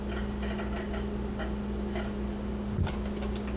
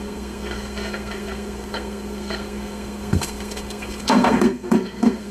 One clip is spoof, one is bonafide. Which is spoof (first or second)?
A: second